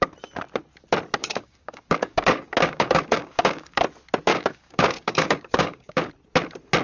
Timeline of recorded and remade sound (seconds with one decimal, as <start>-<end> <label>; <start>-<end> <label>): 0.0-1.2 recorded; 1.2-3.8 remade; 3.8-4.3 recorded; 4.3-6.1 remade; 6.1-6.8 recorded